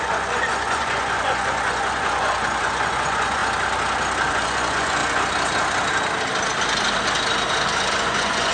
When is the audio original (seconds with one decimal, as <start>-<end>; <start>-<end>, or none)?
3.4-4.3; 5.0-7.9